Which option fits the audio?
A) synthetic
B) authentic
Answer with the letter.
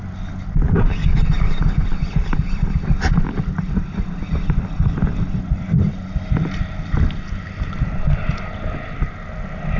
B